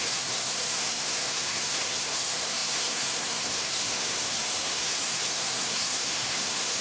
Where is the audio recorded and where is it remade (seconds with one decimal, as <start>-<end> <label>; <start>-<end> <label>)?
0.0-6.8 remade